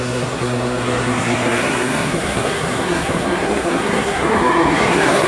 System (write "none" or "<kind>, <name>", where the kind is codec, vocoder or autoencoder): codec, SNAC